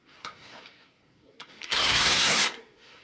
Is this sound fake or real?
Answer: fake